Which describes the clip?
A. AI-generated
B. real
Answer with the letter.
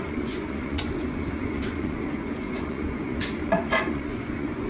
A